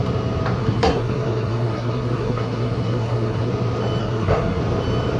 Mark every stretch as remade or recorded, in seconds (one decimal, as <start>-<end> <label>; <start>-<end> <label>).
0.0-0.6 recorded; 0.6-3.5 remade; 3.5-4.0 recorded; 4.0-4.6 remade; 4.6-5.2 recorded